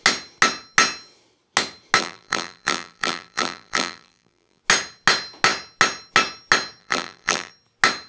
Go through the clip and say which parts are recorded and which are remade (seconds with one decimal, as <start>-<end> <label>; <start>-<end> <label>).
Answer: 0.0-2.0 recorded; 2.0-4.6 remade; 4.6-6.8 recorded; 6.8-7.5 remade; 7.5-8.1 recorded